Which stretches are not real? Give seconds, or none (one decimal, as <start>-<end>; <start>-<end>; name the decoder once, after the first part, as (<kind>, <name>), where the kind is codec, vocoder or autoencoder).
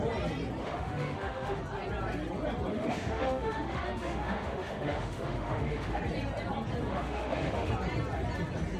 0.6-1.6 (autoencoder, DAC-VAE); 2.7-6.0; 6.9-7.7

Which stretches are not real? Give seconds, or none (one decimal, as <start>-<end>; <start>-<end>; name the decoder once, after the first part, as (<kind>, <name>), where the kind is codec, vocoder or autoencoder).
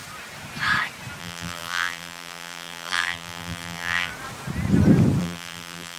1.2-4.1 (vocoder, BigVGAN v2); 5.2-6.0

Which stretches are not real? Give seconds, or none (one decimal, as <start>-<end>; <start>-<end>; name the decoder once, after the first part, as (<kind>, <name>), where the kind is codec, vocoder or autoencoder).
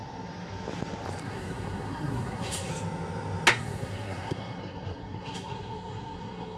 1.2-2.7 (codec, SNAC); 3.5-6.6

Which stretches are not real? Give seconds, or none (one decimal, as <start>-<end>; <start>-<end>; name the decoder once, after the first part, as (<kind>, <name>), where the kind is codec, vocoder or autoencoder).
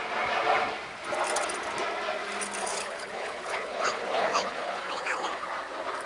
2.7-5.5 (codec, HILCodec)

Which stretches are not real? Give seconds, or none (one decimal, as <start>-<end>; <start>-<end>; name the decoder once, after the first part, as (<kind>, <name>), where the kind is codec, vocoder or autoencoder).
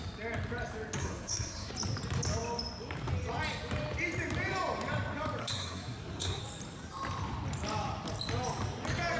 1.0-1.7 (codec, SNAC); 5.4-6.4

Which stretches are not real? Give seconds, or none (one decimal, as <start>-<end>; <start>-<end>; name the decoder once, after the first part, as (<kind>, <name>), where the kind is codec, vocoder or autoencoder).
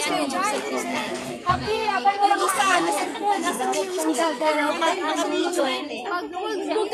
0.9-4.7 (codec, SNAC); 5.4-5.9